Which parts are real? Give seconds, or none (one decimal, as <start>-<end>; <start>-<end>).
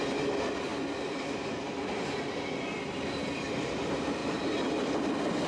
4.2-5.1